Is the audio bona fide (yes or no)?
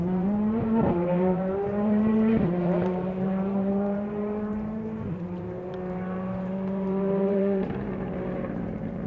no